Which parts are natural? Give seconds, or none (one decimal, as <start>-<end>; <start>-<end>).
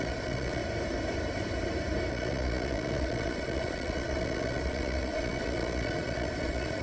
0.6-2.1